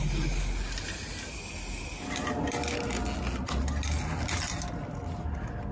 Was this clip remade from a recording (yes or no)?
no